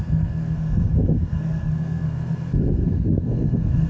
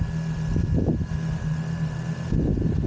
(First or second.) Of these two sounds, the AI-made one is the first